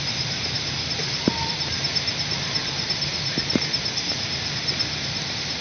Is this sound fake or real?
real